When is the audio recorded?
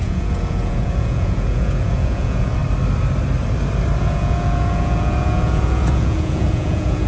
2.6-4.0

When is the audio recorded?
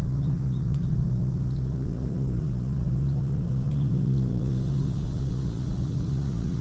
none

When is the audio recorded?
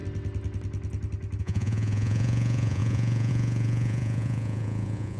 0.0-1.4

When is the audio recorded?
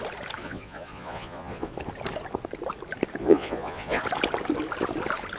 0.0-0.4; 1.7-3.2; 4.0-5.4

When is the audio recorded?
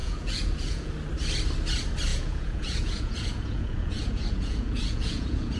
0.9-2.1